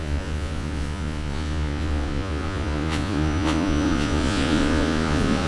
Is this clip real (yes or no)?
no